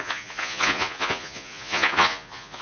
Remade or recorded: remade